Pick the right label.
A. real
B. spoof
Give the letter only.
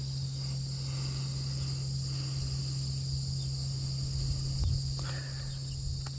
A